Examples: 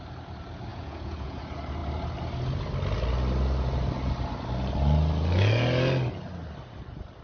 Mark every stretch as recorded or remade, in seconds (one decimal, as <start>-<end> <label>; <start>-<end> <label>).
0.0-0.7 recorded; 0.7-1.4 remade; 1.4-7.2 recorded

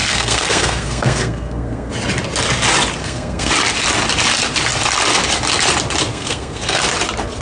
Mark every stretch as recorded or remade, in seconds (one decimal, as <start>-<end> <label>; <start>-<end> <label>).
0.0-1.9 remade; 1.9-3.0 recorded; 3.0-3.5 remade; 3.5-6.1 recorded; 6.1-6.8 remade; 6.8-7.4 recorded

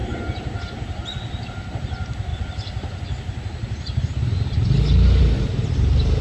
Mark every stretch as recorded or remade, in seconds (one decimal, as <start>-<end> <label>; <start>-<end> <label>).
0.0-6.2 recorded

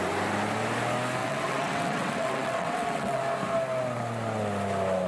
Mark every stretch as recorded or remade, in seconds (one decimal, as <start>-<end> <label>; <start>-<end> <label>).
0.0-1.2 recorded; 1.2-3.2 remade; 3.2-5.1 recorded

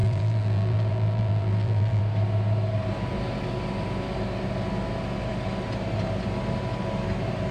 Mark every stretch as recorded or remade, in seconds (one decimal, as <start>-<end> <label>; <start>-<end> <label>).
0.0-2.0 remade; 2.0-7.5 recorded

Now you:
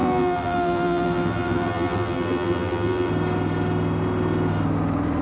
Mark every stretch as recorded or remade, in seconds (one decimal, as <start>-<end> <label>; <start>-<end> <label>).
0.0-3.1 remade; 3.1-5.2 recorded